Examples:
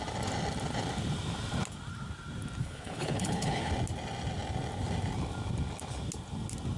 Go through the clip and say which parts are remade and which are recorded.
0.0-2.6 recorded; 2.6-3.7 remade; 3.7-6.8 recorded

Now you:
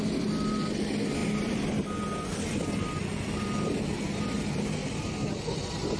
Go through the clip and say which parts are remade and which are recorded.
0.0-6.0 recorded

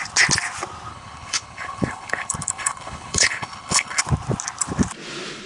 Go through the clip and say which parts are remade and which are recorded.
0.0-0.9 recorded; 0.9-4.0 remade; 4.0-5.5 recorded